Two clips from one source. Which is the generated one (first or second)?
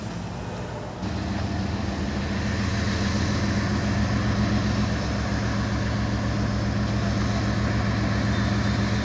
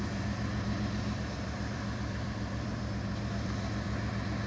second